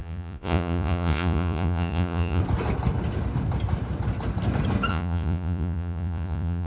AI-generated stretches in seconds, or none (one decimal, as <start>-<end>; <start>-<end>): 0.0-2.4; 4.9-6.7